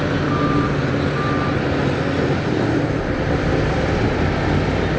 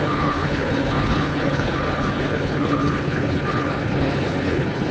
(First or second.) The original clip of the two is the first